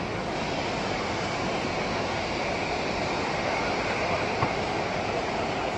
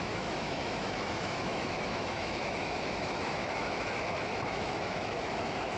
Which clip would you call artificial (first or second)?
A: second